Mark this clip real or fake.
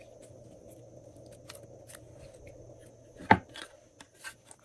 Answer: real